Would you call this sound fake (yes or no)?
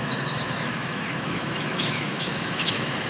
yes